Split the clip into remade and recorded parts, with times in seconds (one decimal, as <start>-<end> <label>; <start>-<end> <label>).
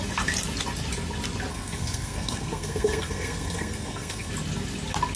0.0-1.5 recorded; 1.5-4.3 remade; 4.3-5.2 recorded